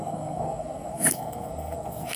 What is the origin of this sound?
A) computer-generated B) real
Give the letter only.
A